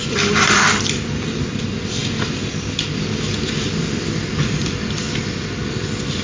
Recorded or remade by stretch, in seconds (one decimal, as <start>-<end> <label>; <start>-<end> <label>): 0.0-6.2 recorded